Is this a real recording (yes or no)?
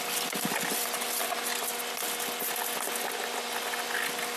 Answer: yes